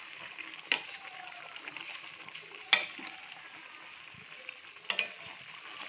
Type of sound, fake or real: real